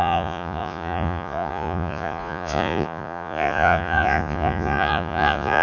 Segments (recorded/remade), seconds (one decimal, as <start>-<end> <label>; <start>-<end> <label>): 0.0-5.6 remade